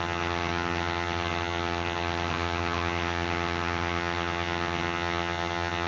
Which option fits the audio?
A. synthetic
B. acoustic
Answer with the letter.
A